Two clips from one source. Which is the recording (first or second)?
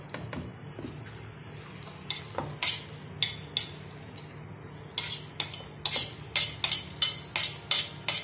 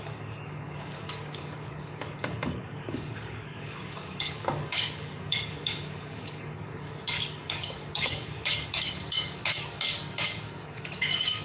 first